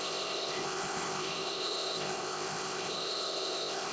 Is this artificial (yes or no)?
yes